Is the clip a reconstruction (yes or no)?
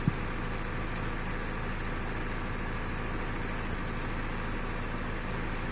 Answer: no